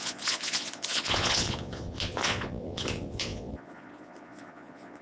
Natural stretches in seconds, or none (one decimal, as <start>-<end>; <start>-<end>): none